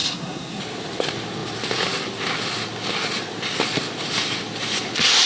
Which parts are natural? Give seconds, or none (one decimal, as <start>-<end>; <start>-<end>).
0.6-5.3